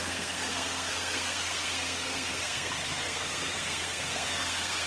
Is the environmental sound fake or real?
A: fake